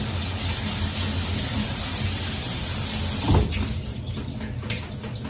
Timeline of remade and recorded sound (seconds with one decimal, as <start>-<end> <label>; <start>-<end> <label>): 0.0-5.3 recorded